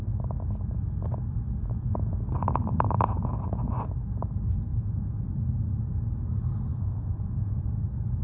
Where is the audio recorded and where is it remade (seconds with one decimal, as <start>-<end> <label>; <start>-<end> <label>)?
0.0-1.6 recorded; 1.6-2.1 remade; 2.1-4.7 recorded; 4.7-5.3 remade; 5.3-6.7 recorded; 6.7-7.7 remade; 7.7-8.2 recorded